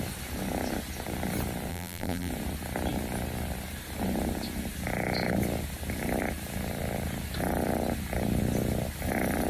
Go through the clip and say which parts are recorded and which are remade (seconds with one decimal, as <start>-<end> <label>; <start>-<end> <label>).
0.0-1.7 recorded; 1.7-2.3 remade; 2.3-9.5 recorded